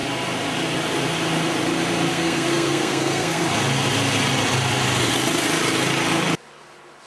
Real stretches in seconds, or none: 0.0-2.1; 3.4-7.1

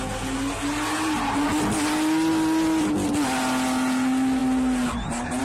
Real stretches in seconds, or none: 0.0-5.4

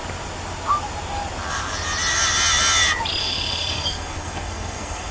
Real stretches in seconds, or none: 0.0-3.2

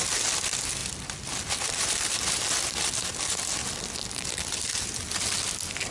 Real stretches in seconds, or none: 0.0-5.9

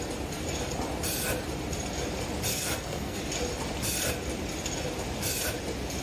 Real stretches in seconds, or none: 0.0-2.5; 3.2-6.0